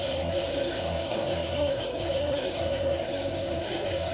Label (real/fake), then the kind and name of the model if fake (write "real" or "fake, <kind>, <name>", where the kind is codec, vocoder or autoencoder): fake, codec, SNAC